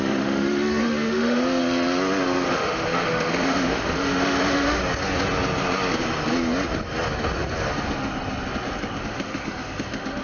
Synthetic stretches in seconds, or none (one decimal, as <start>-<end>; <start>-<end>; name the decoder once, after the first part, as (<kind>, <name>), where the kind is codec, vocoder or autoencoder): 0.0-1.6 (autoencoder, DAC-VAE); 2.5-4.8; 9.0-10.2